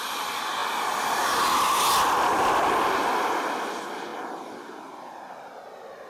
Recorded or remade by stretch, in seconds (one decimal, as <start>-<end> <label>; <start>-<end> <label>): 0.0-6.1 recorded